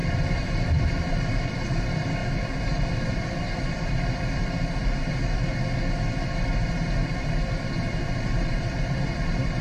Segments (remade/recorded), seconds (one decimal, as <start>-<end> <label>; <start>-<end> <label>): 0.0-5.5 remade; 5.5-6.7 recorded; 6.7-9.6 remade